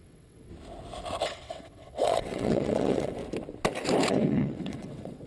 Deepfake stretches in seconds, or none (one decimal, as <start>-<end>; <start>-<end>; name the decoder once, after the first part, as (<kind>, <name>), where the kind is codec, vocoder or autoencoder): 0.0-0.5 (vocoder, WaveNeXt); 1.2-3.2; 4.1-5.3